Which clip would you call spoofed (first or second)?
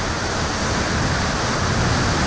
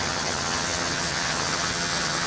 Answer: second